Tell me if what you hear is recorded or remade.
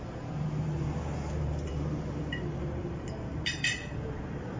remade